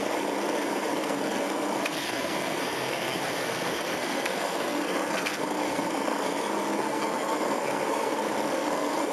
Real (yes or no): no